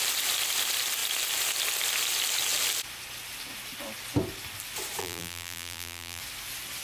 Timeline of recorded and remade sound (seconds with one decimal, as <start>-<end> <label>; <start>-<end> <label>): 0.0-5.0 recorded; 5.0-6.2 remade; 6.2-6.8 recorded